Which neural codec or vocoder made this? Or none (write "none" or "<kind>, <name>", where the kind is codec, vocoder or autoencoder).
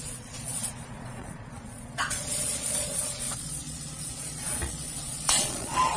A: vocoder, Vocos